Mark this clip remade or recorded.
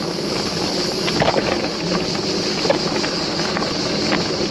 recorded